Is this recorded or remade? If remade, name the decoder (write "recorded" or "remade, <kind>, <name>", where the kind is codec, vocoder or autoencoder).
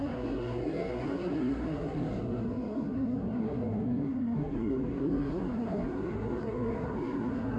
remade, codec, SNAC